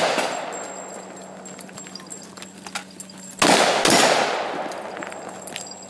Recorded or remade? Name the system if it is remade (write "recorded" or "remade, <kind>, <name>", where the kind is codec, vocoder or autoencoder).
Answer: recorded